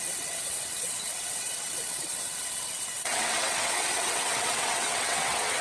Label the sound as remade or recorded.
remade